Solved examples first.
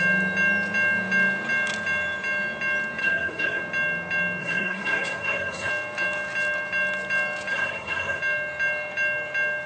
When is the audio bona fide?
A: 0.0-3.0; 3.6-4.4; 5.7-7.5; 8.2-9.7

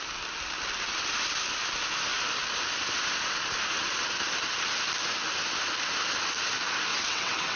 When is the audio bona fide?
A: 0.0-6.9

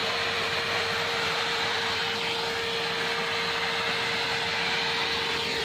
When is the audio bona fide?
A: 2.0-5.6

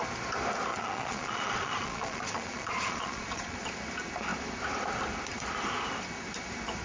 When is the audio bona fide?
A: 0.0-0.7; 3.7-6.8

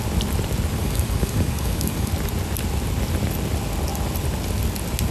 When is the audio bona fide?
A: 0.0-0.8; 2.1-5.1

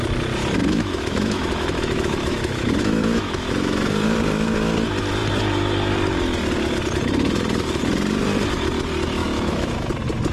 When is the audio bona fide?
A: 0.0-0.6; 3.9-9.2; 9.9-10.3